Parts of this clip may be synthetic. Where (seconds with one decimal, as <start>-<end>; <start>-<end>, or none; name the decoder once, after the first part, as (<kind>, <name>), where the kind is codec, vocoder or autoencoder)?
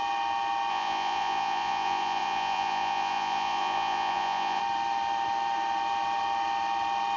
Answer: 0.7-4.6 (vocoder, Vocos)